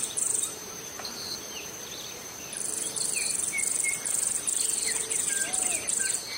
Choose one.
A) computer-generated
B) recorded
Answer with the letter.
A